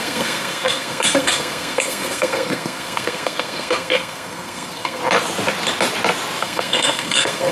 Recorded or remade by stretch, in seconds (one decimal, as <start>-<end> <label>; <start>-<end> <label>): 0.0-5.0 remade; 5.0-6.4 recorded; 6.4-7.5 remade